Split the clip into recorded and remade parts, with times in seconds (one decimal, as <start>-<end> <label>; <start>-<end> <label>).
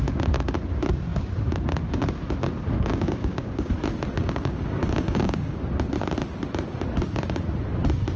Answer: 0.0-2.9 recorded; 2.9-3.7 remade; 3.7-4.2 recorded; 4.2-5.6 remade; 5.6-8.2 recorded